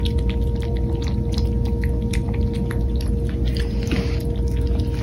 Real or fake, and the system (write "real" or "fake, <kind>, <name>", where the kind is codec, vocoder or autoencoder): real